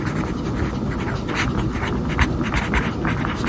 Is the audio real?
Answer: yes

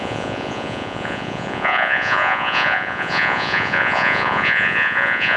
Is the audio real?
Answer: no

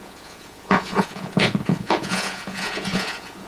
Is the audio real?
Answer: no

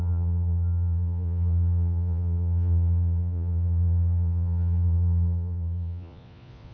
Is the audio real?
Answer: no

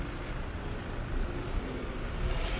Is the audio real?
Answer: yes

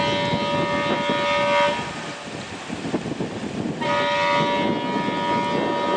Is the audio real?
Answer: yes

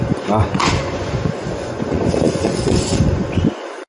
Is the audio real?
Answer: no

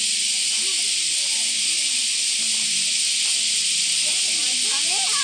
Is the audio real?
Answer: yes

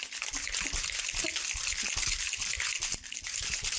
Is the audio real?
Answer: yes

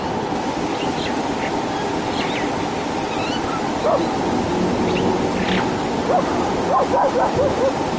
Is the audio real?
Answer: yes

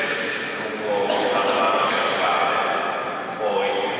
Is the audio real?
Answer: yes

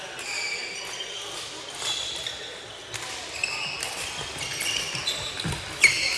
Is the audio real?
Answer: yes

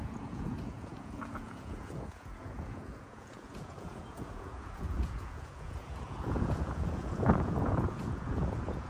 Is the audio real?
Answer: no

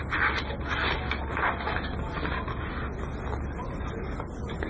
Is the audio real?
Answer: yes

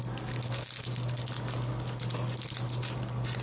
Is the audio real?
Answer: yes